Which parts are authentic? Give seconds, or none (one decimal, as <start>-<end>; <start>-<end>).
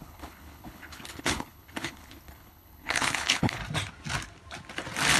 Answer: 3.6-5.2